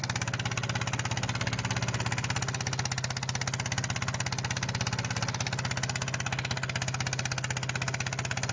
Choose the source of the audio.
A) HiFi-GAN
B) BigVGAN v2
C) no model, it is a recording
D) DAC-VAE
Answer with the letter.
C